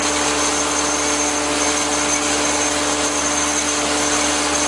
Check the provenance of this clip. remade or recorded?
recorded